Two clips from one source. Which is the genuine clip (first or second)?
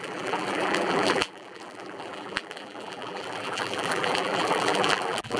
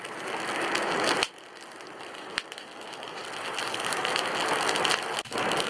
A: second